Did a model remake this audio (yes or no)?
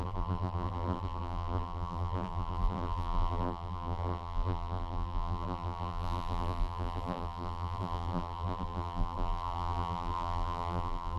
yes